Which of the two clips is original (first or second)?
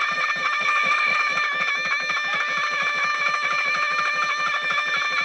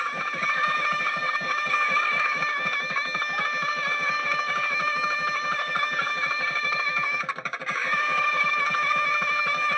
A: first